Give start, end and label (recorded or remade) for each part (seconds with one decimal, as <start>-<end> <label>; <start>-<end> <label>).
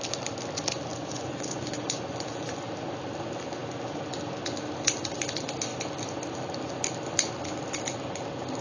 0.0-0.9 recorded; 0.9-2.7 remade; 2.7-8.6 recorded